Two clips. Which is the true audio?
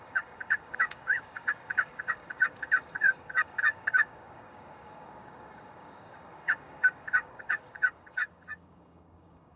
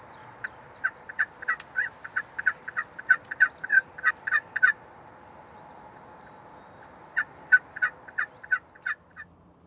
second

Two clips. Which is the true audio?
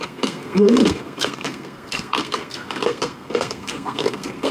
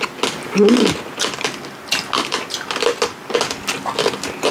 second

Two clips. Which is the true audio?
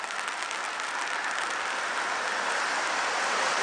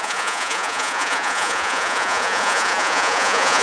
first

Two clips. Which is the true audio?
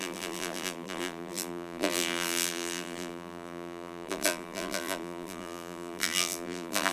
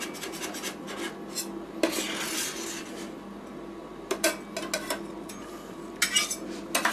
second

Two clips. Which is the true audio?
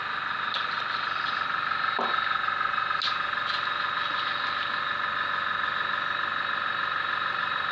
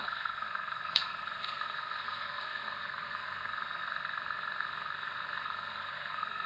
first